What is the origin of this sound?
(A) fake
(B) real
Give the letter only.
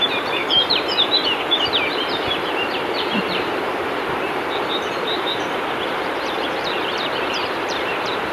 A